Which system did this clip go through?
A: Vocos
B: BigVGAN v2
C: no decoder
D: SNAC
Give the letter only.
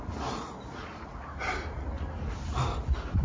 B